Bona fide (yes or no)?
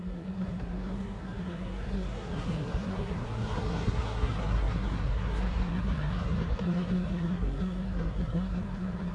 no